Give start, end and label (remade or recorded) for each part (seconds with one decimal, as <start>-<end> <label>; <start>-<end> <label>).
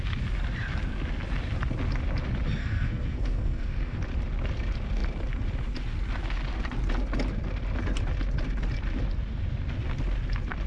0.0-2.6 recorded; 2.6-4.0 remade; 4.0-10.7 recorded